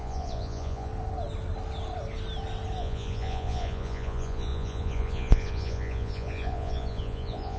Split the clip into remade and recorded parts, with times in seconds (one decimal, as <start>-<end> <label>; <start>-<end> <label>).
0.0-0.9 remade; 0.9-2.8 recorded; 2.8-7.6 remade